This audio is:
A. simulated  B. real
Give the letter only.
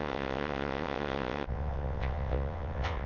A